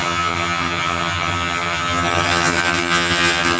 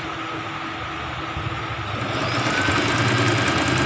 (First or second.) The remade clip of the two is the first